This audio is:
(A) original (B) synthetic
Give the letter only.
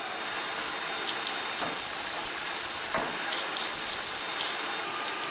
A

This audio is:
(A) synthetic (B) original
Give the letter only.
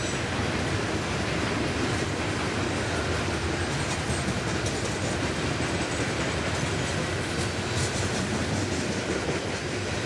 B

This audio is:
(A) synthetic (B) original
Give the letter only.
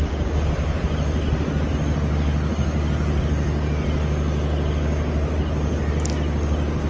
B